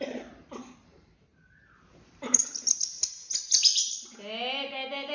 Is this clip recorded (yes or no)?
yes